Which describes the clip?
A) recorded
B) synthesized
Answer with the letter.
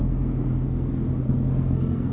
B